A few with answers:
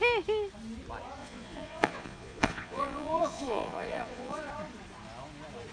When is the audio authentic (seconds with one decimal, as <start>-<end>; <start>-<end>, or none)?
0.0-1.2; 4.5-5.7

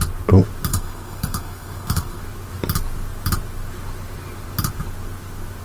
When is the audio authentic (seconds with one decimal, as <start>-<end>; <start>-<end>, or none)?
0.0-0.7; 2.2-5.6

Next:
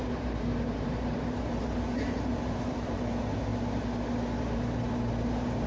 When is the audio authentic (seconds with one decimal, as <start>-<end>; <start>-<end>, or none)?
3.5-4.4

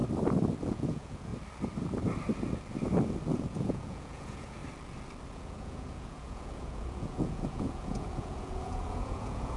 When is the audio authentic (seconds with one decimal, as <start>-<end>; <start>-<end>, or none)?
0.0-0.6; 1.3-3.3; 4.6-5.3

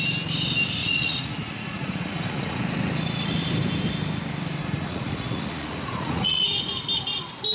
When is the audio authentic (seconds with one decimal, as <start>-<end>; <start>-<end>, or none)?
0.0-0.8; 2.6-4.6; 6.4-7.5